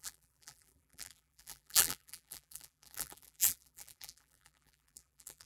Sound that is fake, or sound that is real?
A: fake